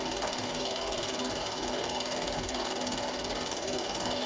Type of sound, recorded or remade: remade